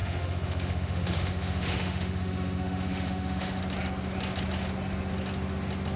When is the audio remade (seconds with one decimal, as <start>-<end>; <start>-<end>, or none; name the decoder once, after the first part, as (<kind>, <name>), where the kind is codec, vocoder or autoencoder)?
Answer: 0.0-3.6 (autoencoder, DAC-VAE)